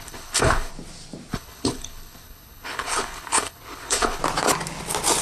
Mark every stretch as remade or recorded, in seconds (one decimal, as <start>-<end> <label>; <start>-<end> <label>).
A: 0.0-0.7 remade; 0.7-1.3 recorded; 1.3-4.2 remade; 4.2-5.2 recorded